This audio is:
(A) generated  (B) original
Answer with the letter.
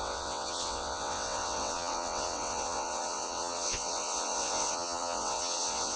A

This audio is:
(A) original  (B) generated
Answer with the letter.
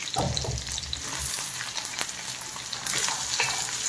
B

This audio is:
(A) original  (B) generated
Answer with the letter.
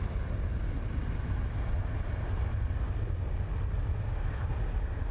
A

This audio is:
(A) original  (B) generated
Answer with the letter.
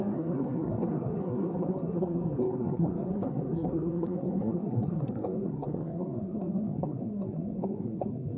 B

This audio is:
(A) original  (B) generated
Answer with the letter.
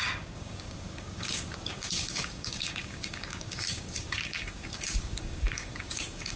B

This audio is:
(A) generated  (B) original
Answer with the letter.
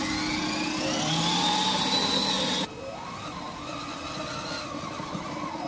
B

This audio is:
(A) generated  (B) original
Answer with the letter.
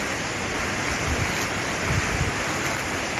B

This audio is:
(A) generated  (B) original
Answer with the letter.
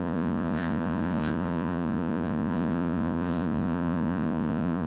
A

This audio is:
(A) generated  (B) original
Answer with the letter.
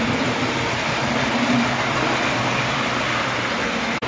B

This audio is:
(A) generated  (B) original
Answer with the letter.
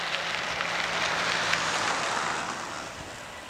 B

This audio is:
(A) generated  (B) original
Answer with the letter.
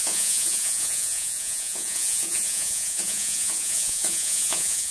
A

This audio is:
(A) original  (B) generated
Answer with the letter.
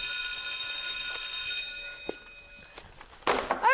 A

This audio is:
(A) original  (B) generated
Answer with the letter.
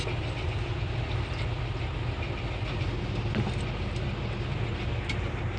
A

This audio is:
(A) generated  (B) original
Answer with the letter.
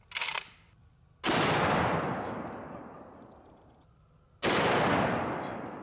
B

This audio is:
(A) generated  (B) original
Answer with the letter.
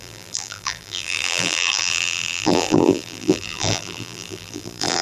A